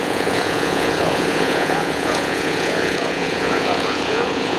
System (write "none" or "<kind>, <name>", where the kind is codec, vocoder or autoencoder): vocoder, Vocos